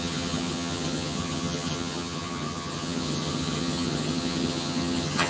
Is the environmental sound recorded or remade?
remade